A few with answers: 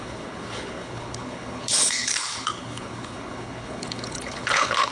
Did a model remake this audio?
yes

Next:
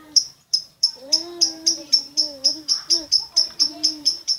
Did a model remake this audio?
yes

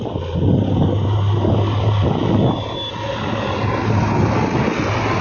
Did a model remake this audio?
no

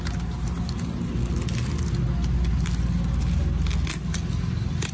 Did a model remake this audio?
no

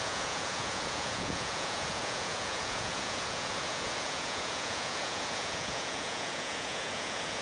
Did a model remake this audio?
yes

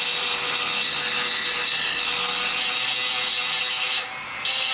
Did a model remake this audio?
no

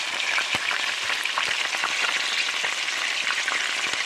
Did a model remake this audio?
no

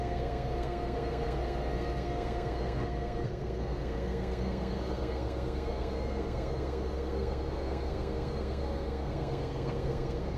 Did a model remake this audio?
yes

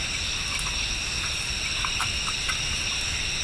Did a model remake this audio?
no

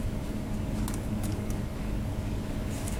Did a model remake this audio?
yes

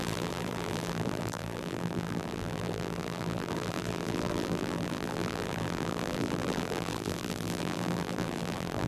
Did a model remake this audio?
yes